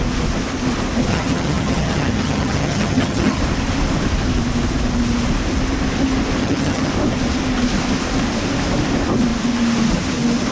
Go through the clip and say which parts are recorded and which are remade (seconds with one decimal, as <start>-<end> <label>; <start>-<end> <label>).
0.0-1.1 recorded; 1.1-3.4 remade; 3.4-6.4 recorded; 6.4-6.9 remade; 6.9-10.5 recorded